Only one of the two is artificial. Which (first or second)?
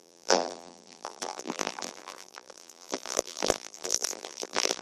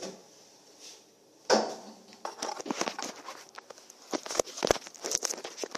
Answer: first